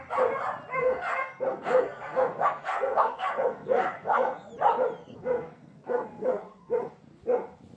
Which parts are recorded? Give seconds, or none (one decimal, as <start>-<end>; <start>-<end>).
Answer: 0.0-0.7; 4.5-5.0; 6.9-7.8